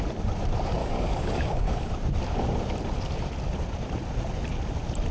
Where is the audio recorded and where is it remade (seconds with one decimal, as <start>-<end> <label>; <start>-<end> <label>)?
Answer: 0.0-0.8 recorded; 0.8-1.9 remade; 1.9-5.1 recorded